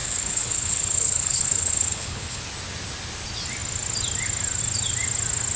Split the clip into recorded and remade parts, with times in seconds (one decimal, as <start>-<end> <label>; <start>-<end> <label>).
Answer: 0.0-2.4 remade; 2.4-5.6 recorded